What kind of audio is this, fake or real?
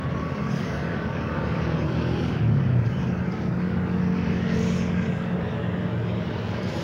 fake